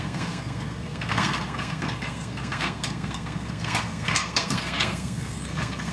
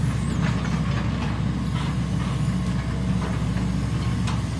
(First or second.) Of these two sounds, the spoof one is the first